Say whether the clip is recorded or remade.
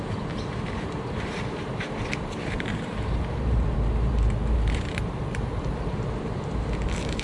remade